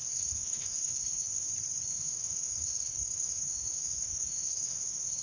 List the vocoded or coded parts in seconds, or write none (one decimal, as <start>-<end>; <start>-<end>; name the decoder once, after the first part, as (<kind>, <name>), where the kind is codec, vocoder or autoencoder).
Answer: 0.0-1.5 (autoencoder, DAC-VAE); 1.9-5.2